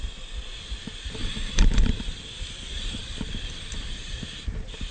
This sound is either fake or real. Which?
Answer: real